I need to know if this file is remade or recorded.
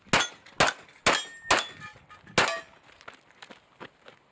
recorded